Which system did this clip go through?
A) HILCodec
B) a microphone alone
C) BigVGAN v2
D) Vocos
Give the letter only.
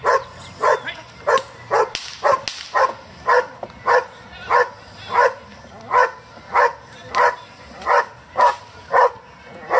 B